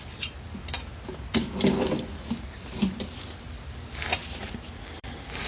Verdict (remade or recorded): recorded